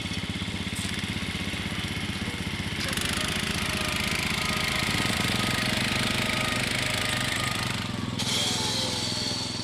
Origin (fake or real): real